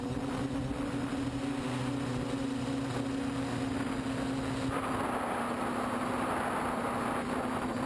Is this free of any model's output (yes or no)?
yes